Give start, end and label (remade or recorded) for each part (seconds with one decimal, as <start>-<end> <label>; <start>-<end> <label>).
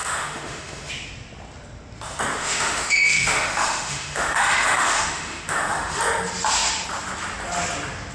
0.0-0.9 remade; 0.9-2.4 recorded; 2.4-6.0 remade; 6.0-8.1 recorded